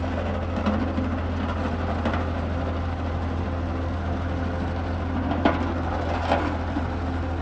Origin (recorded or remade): recorded